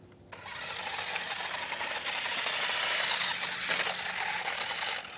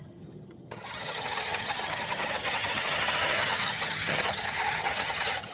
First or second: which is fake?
second